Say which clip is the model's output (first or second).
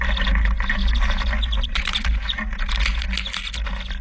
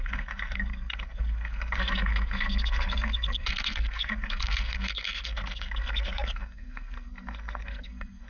second